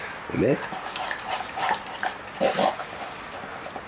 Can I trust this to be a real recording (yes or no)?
yes